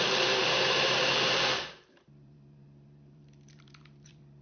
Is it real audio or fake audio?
fake